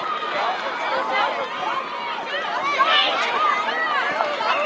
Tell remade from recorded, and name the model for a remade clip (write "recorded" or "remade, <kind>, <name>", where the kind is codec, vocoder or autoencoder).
recorded